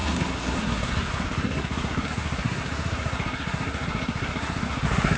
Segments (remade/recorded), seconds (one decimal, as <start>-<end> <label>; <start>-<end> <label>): 0.0-5.2 remade